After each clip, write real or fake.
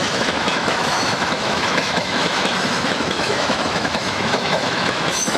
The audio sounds fake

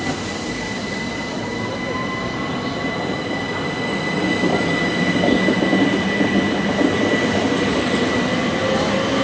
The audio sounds real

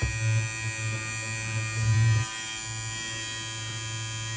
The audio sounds real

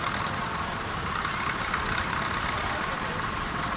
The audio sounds real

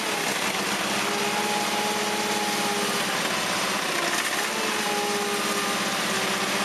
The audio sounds real